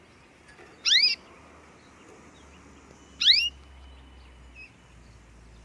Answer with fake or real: real